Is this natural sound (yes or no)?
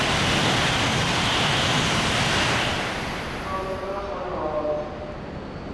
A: yes